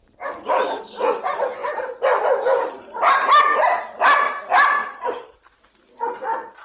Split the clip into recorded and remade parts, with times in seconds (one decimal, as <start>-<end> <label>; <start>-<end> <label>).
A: 0.0-6.6 recorded